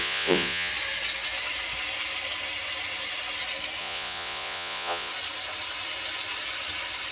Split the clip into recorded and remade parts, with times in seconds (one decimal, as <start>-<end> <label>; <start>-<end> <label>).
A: 0.0-0.7 remade; 0.7-3.8 recorded; 3.8-5.1 remade; 5.1-7.1 recorded